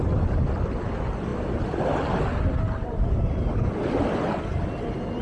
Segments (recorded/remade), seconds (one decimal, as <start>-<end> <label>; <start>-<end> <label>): 0.0-5.2 recorded